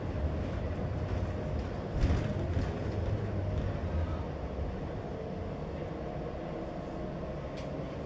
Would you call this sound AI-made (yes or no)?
no